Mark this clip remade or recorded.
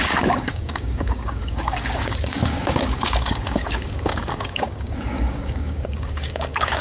remade